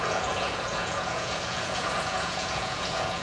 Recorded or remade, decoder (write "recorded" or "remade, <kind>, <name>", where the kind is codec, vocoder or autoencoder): remade, vocoder, Vocos